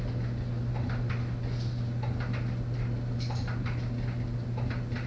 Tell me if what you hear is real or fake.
real